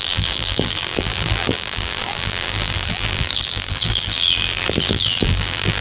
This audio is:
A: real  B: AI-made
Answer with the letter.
B